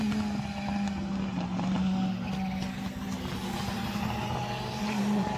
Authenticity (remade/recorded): recorded